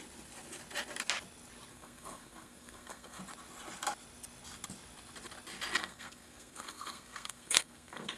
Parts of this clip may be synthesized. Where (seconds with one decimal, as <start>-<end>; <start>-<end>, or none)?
1.7-3.2; 5.8-8.2